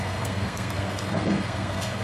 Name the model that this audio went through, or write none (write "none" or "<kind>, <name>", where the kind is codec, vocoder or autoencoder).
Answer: codec, SNAC